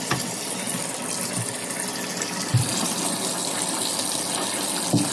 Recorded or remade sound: recorded